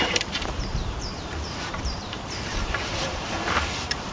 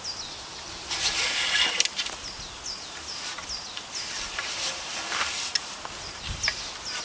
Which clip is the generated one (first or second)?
first